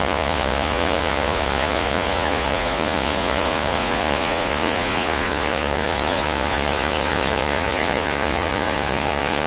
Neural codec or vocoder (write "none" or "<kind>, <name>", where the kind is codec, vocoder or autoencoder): vocoder, Vocos